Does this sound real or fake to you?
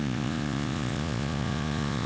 fake